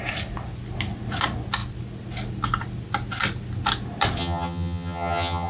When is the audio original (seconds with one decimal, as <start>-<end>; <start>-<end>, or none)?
0.0-4.2